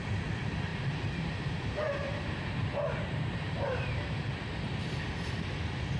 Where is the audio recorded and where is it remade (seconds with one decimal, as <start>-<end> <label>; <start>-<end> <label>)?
0.0-0.7 recorded; 0.7-4.3 remade; 4.3-6.0 recorded